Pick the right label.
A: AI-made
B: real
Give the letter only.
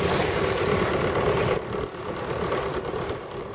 B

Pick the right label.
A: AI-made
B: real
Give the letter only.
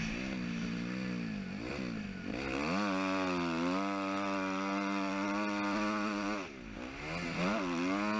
B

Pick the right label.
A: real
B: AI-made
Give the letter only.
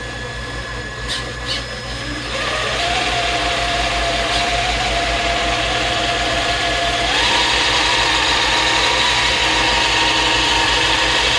A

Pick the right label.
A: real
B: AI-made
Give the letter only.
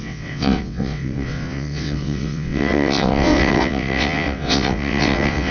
B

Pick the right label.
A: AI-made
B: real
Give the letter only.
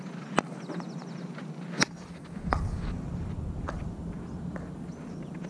B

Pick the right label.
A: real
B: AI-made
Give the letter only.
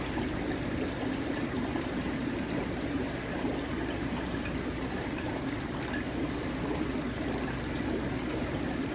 A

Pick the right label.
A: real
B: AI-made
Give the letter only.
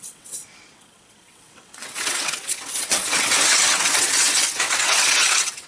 B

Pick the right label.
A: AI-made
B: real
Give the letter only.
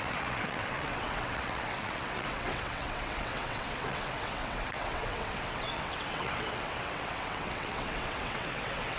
A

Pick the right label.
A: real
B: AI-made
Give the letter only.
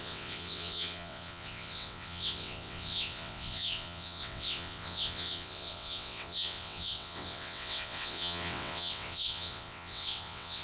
B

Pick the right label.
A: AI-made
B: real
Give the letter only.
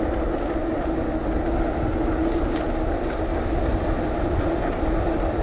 B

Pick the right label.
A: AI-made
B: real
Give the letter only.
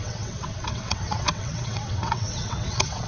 A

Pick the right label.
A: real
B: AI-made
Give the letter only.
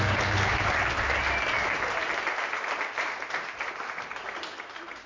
A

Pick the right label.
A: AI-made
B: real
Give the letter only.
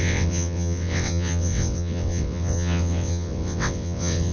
A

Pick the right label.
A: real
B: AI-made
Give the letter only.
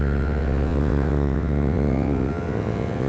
B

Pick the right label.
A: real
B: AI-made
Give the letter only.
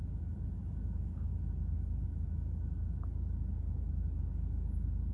A